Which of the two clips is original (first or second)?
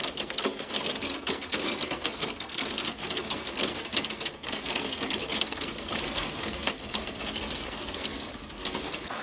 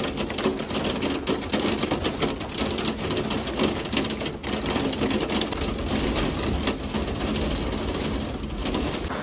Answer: second